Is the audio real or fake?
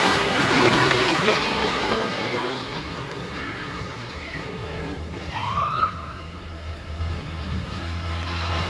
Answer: fake